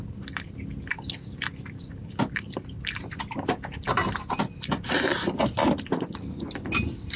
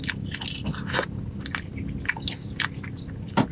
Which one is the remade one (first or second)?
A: first